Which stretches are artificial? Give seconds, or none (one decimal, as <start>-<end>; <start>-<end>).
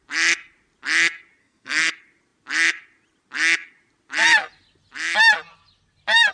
1.4-1.9